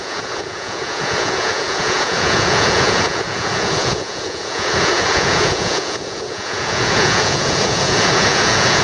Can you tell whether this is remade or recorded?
remade